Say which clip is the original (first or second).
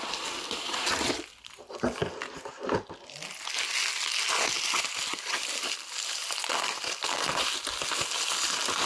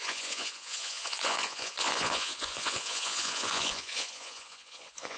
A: first